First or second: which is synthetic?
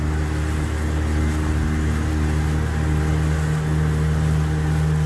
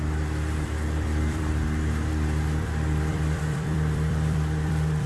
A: second